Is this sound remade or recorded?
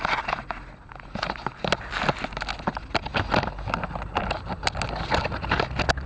recorded